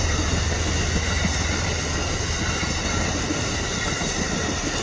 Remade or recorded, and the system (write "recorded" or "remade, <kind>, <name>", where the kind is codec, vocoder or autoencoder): recorded